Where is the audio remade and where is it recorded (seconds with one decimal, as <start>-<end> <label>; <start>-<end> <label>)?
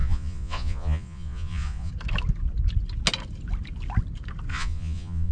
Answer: 0.0-1.9 remade; 1.9-4.5 recorded; 4.5-5.3 remade